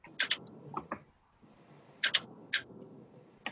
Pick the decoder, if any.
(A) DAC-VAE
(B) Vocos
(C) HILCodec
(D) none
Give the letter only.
D